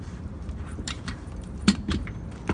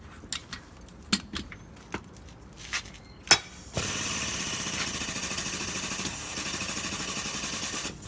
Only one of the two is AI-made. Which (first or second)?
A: first